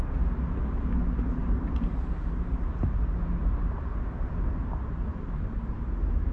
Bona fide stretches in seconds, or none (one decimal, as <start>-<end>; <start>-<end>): 0.0-1.4; 4.2-5.1; 5.7-6.3